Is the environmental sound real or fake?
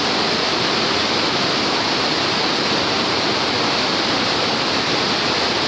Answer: real